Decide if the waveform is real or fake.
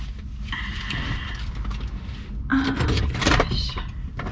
fake